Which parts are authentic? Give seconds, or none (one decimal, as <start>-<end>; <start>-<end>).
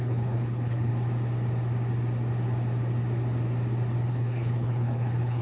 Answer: 0.9-4.1